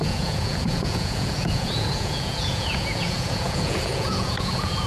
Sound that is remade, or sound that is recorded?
remade